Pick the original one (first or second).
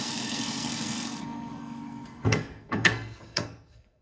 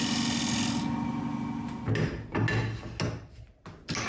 second